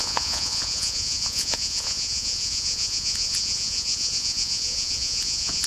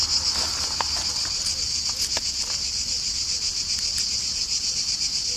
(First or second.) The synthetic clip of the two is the first